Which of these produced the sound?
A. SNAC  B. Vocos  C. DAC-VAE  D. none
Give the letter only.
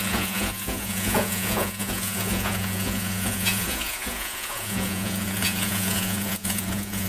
B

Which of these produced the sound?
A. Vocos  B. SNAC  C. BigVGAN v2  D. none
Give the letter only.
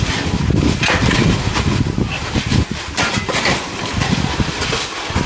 D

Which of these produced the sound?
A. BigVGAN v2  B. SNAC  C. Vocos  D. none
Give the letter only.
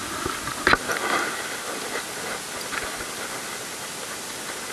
D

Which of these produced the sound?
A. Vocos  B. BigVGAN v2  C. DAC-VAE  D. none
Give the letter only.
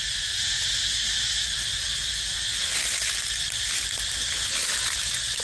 D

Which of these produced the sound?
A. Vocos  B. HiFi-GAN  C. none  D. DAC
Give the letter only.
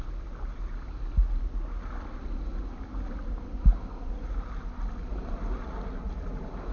C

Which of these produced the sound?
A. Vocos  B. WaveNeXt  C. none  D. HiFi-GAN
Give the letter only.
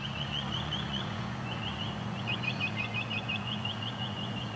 A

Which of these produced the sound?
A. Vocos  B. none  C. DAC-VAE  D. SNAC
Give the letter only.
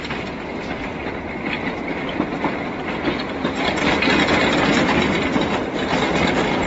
B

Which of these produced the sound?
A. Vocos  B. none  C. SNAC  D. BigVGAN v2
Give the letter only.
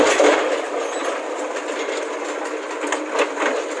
B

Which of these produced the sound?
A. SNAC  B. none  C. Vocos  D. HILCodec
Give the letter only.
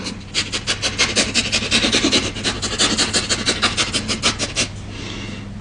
B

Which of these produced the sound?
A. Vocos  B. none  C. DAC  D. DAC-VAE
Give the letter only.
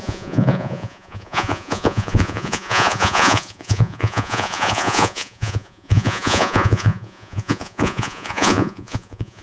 A